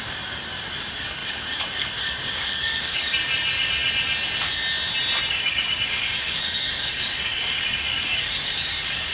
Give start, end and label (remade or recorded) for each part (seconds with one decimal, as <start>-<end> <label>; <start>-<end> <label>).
0.0-3.2 remade; 3.2-5.3 recorded; 5.3-9.1 remade